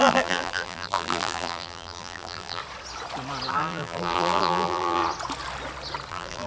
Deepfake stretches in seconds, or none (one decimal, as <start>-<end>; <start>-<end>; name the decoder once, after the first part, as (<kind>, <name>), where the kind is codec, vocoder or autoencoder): 0.0-2.6 (vocoder, BigVGAN v2); 3.5-5.0; 6.1-6.5